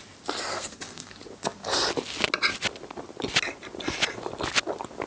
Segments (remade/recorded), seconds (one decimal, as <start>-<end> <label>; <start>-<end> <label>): 0.0-0.5 recorded; 0.5-1.1 remade; 1.1-5.1 recorded